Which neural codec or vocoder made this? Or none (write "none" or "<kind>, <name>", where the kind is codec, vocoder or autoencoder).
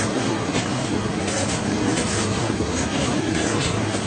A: codec, SNAC